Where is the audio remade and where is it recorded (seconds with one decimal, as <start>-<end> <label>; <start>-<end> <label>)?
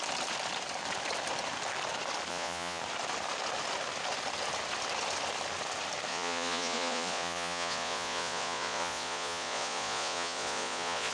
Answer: 0.0-2.3 recorded; 2.3-2.8 remade; 2.8-6.1 recorded; 6.1-11.1 remade